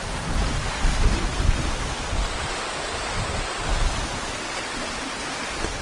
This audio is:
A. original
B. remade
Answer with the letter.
A